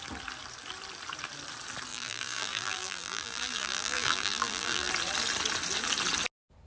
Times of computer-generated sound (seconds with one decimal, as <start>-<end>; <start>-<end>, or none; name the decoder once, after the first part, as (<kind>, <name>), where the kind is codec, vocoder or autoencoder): 1.9-4.9 (vocoder, BigVGAN v2)